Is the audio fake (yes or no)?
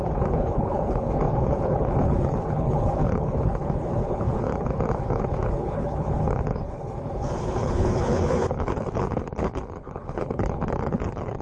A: yes